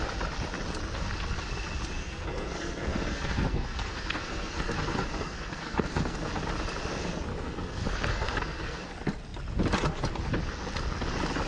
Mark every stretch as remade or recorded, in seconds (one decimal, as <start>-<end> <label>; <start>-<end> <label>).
0.0-2.0 recorded; 2.0-6.2 remade; 6.2-7.3 recorded; 7.3-8.8 remade; 8.8-11.5 recorded